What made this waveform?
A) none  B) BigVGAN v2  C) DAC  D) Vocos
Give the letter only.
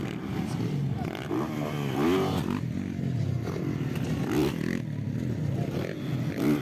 A